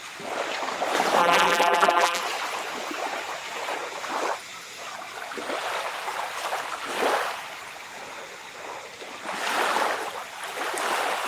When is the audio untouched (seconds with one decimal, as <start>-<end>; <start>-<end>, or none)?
0.0-1.2; 2.2-11.3